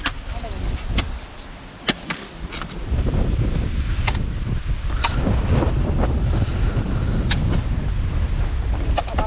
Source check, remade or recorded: recorded